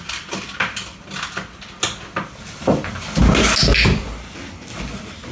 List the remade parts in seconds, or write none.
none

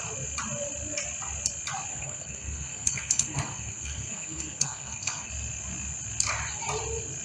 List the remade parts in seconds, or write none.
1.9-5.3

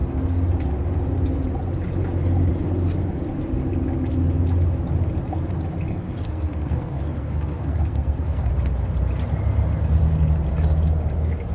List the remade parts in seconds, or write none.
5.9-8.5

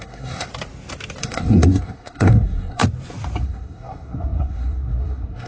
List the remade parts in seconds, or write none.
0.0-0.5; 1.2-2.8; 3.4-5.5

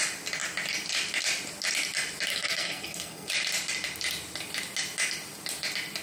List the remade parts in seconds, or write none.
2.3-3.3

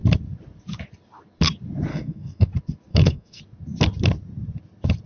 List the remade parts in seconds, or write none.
1.9-2.5; 2.9-3.4